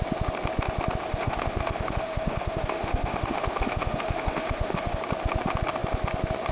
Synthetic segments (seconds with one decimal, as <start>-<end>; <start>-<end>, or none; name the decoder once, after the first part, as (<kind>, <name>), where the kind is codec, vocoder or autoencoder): 1.1-5.0 (autoencoder, DAC-VAE)